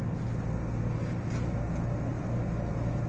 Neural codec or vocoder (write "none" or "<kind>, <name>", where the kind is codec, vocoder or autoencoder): none